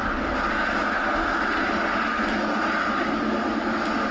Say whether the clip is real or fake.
real